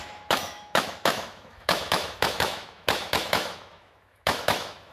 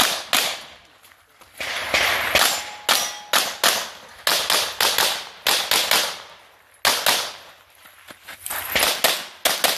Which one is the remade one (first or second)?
first